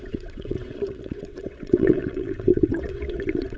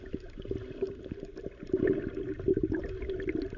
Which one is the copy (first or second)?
first